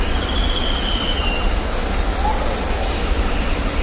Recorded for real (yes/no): yes